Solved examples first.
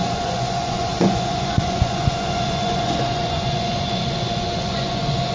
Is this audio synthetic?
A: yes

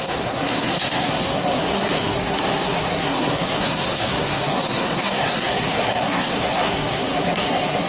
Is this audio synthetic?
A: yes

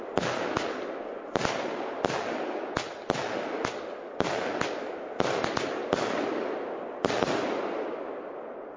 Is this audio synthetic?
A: no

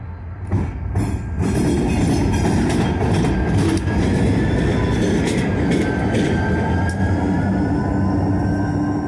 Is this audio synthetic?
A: no